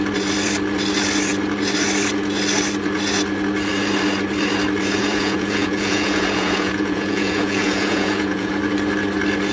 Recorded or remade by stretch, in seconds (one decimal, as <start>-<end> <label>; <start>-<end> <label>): 0.0-5.0 recorded; 5.0-8.5 remade; 8.5-9.5 recorded